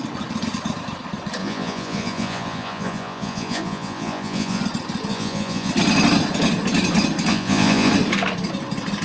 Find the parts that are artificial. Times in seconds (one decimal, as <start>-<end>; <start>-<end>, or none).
1.4-4.6; 5.1-5.7; 7.3-7.9